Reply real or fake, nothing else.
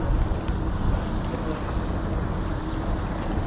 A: real